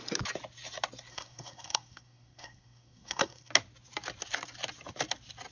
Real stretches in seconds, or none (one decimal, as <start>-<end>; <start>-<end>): 0.0-1.1; 3.5-5.5